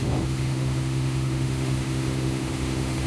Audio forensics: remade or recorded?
remade